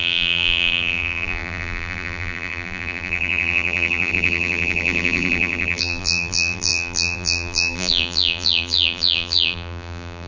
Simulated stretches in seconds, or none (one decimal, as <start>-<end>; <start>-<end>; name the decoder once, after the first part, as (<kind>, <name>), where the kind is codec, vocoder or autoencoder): 0.0-10.3 (vocoder, BigVGAN v2)